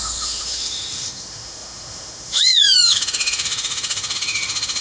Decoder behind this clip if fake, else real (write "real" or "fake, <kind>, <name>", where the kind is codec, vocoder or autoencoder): fake, autoencoder, DAC-VAE